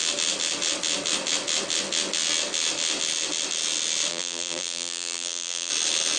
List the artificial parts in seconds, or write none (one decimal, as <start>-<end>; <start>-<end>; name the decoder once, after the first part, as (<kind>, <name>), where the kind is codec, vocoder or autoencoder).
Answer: 4.1-5.7 (vocoder, BigVGAN v2)